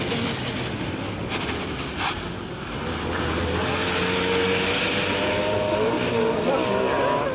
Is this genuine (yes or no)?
yes